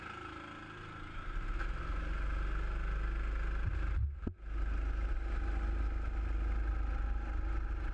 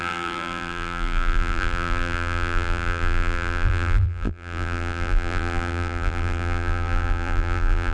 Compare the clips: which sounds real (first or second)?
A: first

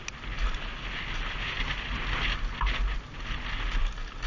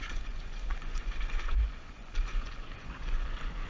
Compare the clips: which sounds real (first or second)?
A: first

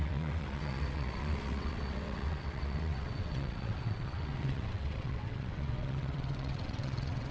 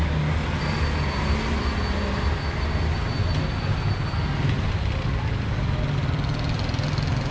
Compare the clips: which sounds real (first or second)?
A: second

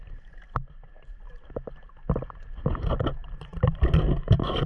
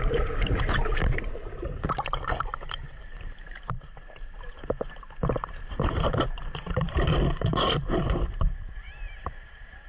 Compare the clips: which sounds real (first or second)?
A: first